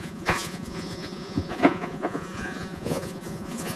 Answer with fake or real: fake